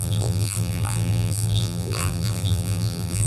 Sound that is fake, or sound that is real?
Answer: fake